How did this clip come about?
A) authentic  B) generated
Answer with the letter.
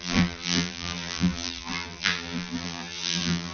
B